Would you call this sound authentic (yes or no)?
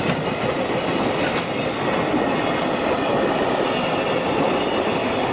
yes